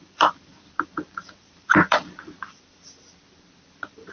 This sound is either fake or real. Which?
fake